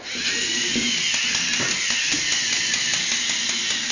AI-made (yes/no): no